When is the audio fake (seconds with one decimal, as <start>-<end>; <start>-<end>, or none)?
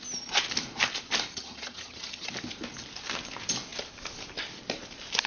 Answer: 1.3-2.3